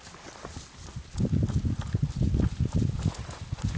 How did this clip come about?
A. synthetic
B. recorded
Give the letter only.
B